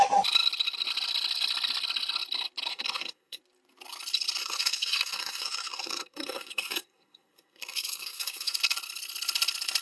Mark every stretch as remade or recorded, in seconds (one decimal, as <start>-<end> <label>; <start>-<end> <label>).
0.0-2.7 recorded; 2.7-3.4 remade; 3.4-4.4 recorded; 4.4-8.6 remade; 8.6-9.8 recorded